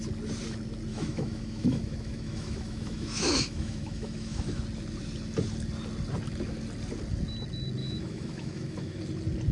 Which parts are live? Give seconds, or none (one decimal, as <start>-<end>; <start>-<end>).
0.0-0.9; 4.6-7.8; 9.0-9.5